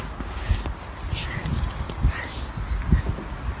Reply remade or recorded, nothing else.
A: recorded